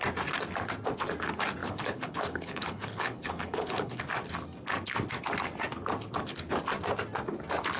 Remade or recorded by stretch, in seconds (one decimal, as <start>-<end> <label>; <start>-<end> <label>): 0.0-1.6 recorded; 1.6-4.0 remade; 4.0-7.8 recorded